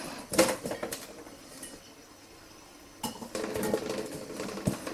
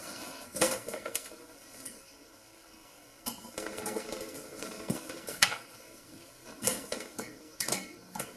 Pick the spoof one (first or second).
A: second